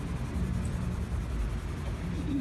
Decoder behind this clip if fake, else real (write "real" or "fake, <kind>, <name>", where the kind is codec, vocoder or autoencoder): fake, vocoder, BigVGAN v2